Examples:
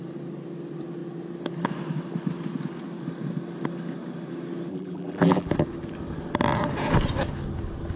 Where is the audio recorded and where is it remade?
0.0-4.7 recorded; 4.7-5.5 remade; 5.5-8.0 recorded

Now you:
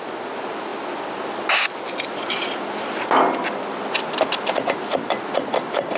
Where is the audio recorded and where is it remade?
0.0-6.0 recorded

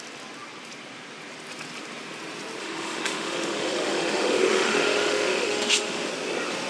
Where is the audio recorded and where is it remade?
0.0-2.6 recorded; 2.6-6.1 remade; 6.1-6.7 recorded

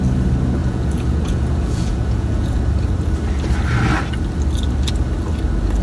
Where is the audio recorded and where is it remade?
0.0-0.6 recorded; 0.6-2.6 remade; 2.6-5.8 recorded

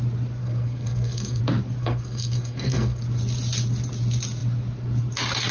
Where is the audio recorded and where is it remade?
0.0-0.4 recorded; 0.4-1.4 remade; 1.4-1.8 recorded; 1.8-3.0 remade; 3.0-5.5 recorded